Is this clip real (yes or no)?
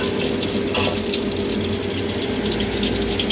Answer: yes